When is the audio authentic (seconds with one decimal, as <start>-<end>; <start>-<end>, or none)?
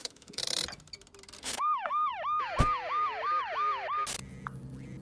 0.4-1.4; 2.1-5.0